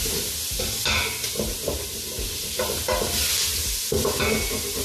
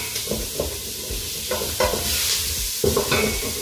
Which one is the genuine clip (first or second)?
first